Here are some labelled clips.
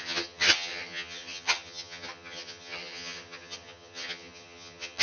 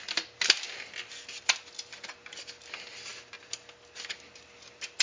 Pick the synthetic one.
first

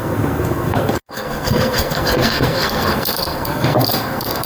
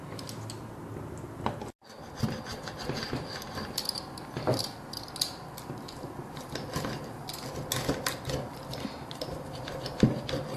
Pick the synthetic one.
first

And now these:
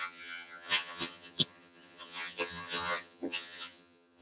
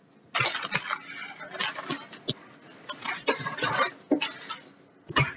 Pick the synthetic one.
first